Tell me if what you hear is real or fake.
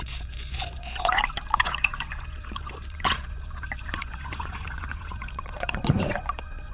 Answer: fake